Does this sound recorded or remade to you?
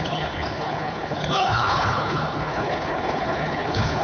remade